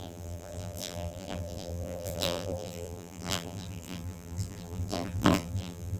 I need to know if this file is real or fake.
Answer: fake